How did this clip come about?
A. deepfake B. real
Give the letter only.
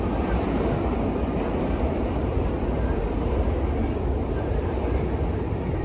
B